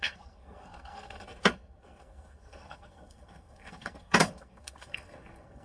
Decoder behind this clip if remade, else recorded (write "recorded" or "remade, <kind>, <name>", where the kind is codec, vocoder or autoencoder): remade, codec, SNAC